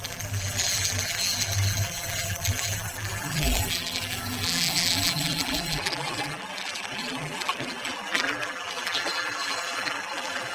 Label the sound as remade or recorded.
remade